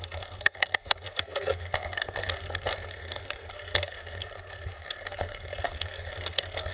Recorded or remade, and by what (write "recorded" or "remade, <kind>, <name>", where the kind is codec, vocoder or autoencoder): remade, codec, SNAC